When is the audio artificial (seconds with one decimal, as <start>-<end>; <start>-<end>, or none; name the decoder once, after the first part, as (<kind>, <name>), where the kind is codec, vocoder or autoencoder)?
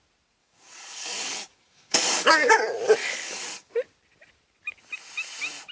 0.4-2.5 (codec, DAC); 3.0-3.7